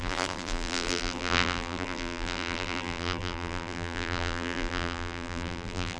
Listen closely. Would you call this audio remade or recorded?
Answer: remade